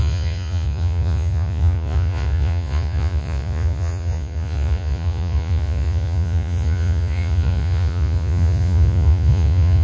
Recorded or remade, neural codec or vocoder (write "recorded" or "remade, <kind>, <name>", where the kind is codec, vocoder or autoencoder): remade, vocoder, Vocos